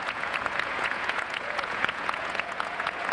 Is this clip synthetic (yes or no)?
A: yes